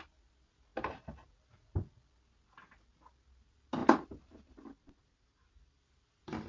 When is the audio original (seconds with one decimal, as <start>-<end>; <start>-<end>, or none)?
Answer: 0.0-0.7; 3.2-3.8

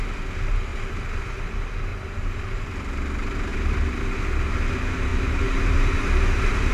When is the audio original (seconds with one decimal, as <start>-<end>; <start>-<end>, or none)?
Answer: 0.0-0.7; 1.3-1.9; 2.7-3.5; 4.2-5.1

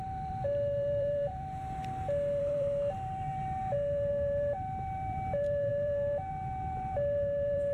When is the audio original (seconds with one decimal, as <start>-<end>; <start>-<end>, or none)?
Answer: 1.8-2.4

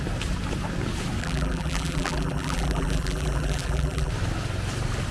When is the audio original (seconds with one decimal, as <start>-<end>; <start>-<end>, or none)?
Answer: 0.0-1.2; 4.1-5.1

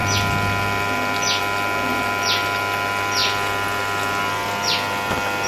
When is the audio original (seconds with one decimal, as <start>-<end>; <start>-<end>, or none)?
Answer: 0.0-5.5

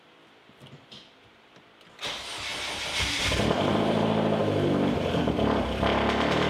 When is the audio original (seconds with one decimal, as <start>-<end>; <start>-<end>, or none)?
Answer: 4.4-5.0

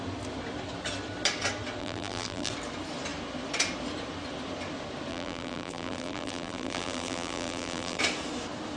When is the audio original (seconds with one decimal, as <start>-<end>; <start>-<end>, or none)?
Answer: 0.0-1.8; 2.5-5.1; 8.0-8.8